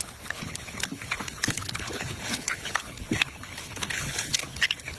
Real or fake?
fake